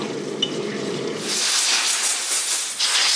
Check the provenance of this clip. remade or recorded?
recorded